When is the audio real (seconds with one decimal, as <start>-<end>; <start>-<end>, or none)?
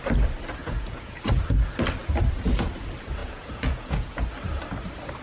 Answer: 0.0-0.6; 1.2-3.2; 4.3-5.2